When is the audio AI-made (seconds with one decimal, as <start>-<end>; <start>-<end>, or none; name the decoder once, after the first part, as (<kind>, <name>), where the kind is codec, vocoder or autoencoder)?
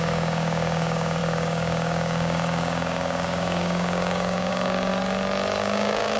0.0-4.9 (codec, DAC); 5.6-6.2